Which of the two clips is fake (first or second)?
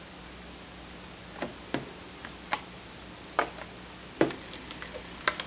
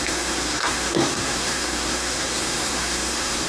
second